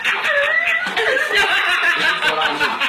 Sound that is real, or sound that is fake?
fake